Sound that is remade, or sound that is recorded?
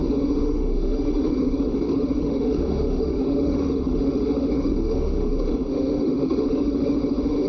remade